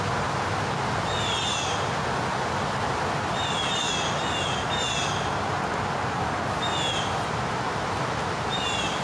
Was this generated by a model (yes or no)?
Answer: no